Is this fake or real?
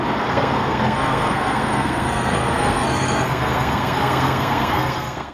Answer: fake